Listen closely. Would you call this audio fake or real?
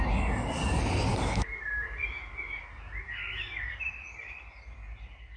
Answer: real